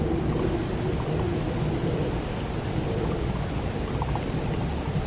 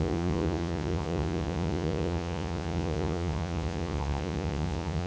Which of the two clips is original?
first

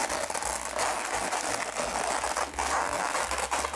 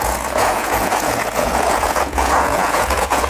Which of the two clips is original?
first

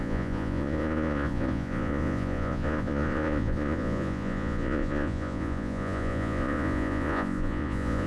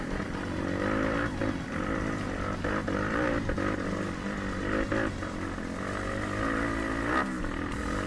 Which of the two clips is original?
second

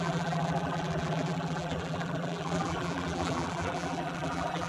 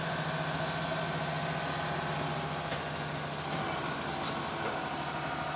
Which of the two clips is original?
second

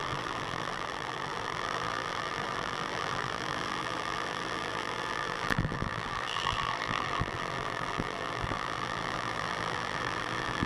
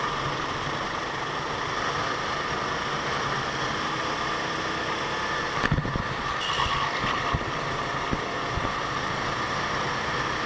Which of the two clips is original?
second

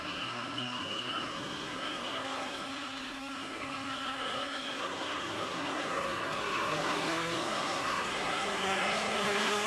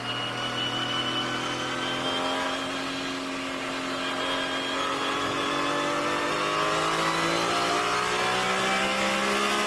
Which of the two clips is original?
second